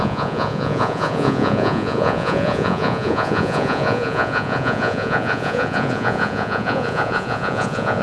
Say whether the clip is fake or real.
fake